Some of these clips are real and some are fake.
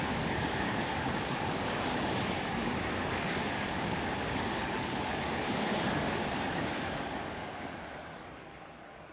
fake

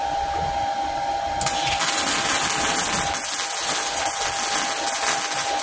real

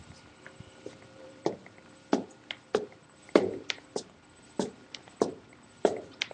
real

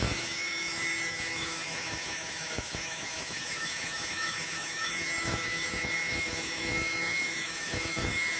fake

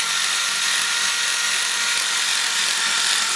real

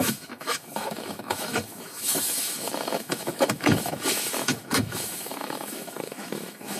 fake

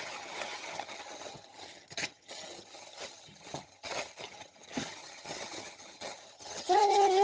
fake